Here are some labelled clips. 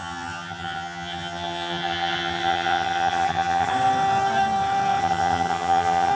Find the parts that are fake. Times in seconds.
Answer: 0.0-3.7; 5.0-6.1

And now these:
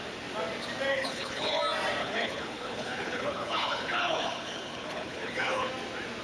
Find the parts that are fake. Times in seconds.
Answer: 0.9-1.6; 2.0-5.7

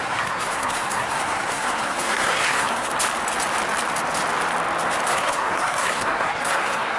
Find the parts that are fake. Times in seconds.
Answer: 0.0-2.9; 5.1-7.0